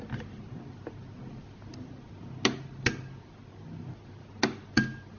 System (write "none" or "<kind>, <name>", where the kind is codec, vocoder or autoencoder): none